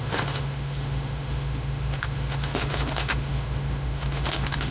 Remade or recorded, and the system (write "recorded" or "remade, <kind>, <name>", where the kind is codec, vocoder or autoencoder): remade, autoencoder, DAC-VAE